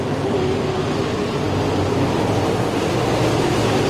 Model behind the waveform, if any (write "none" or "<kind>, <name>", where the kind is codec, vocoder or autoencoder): none